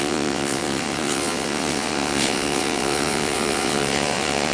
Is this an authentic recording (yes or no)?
no